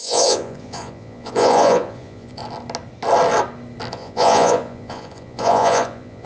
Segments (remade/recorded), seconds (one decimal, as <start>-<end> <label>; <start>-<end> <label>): 0.0-2.4 remade; 2.4-3.9 recorded; 3.9-6.3 remade

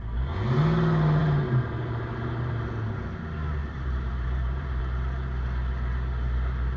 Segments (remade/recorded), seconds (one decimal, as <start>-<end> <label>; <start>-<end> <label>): 0.0-1.2 recorded; 1.2-2.7 remade; 2.7-3.6 recorded; 3.6-4.8 remade; 4.8-6.8 recorded

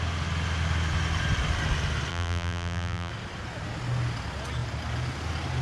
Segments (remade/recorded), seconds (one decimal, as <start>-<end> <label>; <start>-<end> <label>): 0.0-2.1 recorded; 2.1-3.1 remade; 3.1-5.6 recorded

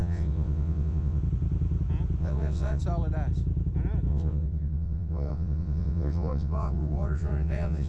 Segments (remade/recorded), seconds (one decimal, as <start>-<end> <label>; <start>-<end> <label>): 0.0-1.2 remade; 1.2-2.2 recorded; 2.2-2.8 remade; 2.8-4.1 recorded; 4.1-7.9 remade

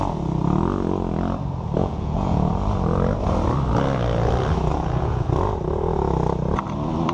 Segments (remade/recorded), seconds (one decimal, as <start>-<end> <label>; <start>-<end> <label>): 0.0-1.8 recorded; 1.8-2.5 remade; 2.5-4.7 recorded; 4.7-5.3 remade; 5.3-7.1 recorded